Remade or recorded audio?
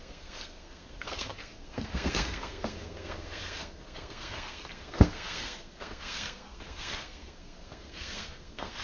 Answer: remade